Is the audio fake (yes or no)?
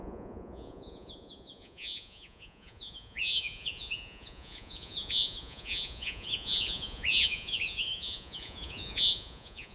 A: yes